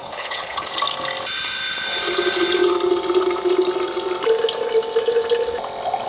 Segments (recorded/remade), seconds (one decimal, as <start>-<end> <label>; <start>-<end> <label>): 0.0-0.7 remade; 0.7-6.1 recorded